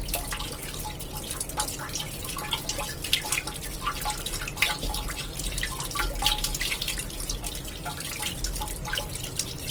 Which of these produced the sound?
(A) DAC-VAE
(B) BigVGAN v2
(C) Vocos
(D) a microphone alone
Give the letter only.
D